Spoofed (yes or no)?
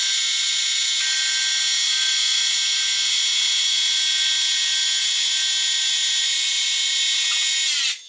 no